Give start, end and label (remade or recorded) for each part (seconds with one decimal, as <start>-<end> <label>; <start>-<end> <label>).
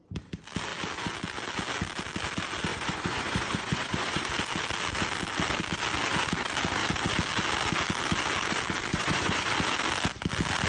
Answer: 0.0-2.7 recorded; 2.7-4.3 remade; 4.3-8.9 recorded; 8.9-9.5 remade; 9.5-10.7 recorded